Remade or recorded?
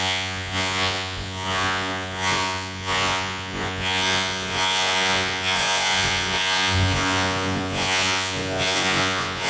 remade